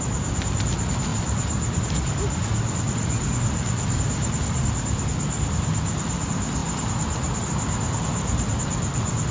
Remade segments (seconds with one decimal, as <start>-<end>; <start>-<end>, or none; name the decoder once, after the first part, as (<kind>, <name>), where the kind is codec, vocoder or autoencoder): none